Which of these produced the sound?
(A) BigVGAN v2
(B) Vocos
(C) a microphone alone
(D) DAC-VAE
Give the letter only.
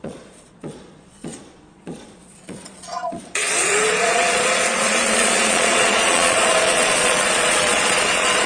B